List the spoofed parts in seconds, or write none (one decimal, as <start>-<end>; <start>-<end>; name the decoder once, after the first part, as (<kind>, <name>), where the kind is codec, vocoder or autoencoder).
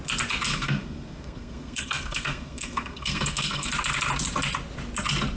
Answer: 0.5-3.7 (codec, SNAC)